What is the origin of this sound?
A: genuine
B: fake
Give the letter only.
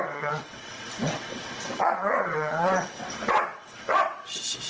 B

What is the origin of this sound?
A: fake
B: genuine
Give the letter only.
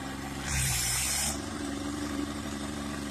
A